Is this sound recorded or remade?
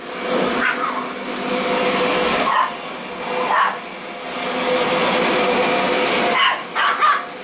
recorded